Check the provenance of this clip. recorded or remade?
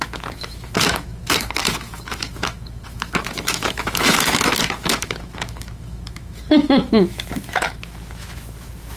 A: remade